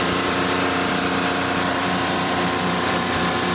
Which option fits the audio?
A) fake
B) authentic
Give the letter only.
A